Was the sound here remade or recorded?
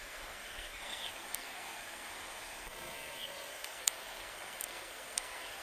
remade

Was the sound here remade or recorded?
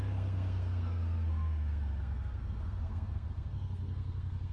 remade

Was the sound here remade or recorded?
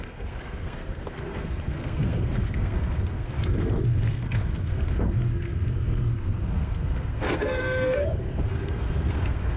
remade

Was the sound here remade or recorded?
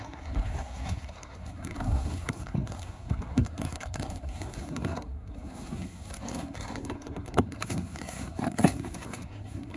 remade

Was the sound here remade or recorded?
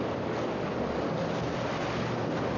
recorded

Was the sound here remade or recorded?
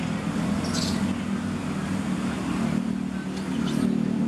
recorded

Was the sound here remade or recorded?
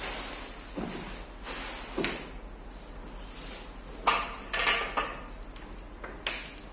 recorded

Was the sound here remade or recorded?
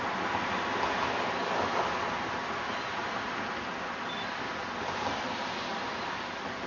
recorded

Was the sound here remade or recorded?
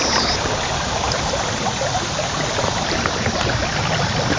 recorded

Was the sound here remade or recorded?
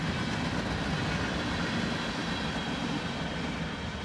recorded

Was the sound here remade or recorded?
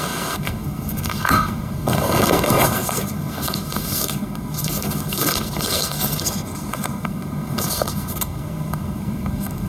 remade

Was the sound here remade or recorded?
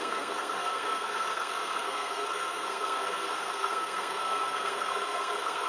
remade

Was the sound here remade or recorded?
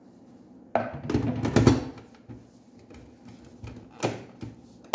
recorded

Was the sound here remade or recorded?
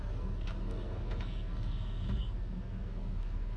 remade